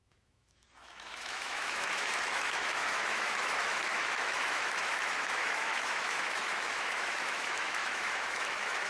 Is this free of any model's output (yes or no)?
no